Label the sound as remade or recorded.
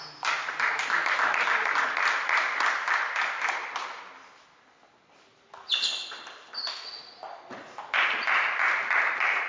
recorded